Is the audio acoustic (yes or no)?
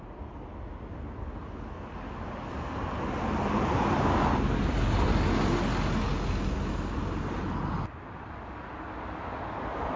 yes